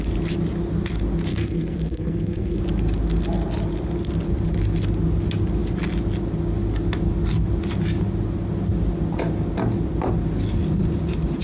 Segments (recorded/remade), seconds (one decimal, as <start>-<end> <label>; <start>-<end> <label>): 0.0-1.3 recorded; 1.3-2.6 remade; 2.6-11.4 recorded